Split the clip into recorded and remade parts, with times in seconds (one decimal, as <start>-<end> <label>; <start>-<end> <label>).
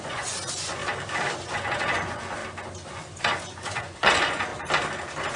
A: 0.0-0.8 remade; 0.8-1.4 recorded; 1.4-2.4 remade; 2.4-3.2 recorded; 3.2-4.5 remade; 4.5-5.4 recorded